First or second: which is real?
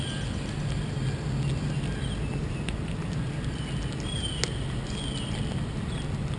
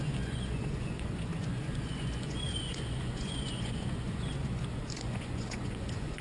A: first